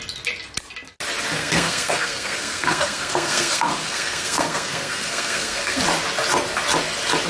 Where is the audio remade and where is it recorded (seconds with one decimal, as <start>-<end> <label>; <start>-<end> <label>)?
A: 0.0-1.4 recorded; 1.4-5.8 remade; 5.8-7.3 recorded